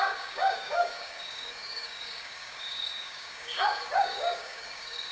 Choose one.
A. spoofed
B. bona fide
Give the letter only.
A